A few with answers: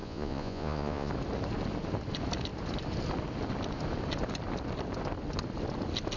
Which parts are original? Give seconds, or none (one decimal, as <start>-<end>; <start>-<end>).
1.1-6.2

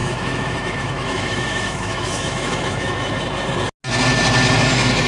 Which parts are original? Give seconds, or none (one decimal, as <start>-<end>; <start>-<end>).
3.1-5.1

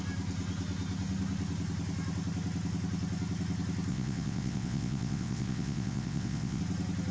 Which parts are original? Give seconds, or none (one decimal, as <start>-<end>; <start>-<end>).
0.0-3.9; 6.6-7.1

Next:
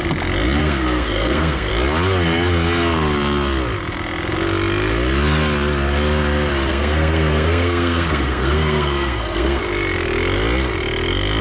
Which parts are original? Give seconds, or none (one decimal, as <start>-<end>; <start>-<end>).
0.0-0.6; 1.7-6.7; 9.6-11.4